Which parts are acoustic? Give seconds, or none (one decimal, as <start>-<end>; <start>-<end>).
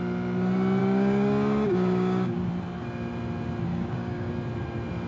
0.0-0.8; 2.5-3.7; 4.3-5.1